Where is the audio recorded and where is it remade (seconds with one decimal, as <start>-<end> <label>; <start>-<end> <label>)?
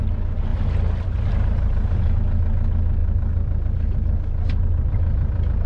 0.0-0.5 recorded; 0.5-2.2 remade; 2.2-5.7 recorded